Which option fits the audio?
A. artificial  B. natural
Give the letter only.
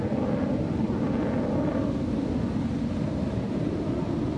B